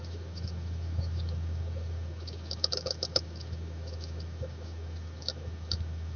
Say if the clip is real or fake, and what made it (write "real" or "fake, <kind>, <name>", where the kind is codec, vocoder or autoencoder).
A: fake, autoencoder, DAC-VAE